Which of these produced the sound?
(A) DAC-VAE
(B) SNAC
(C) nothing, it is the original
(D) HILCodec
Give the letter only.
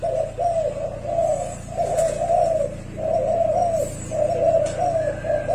C